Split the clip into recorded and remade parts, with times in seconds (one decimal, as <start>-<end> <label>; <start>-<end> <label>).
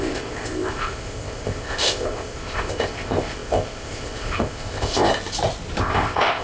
0.0-5.1 remade; 5.1-5.8 recorded; 5.8-6.4 remade